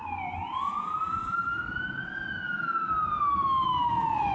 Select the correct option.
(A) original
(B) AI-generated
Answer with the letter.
A